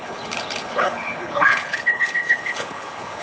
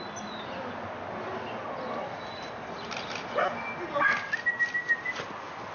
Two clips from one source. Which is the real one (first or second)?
second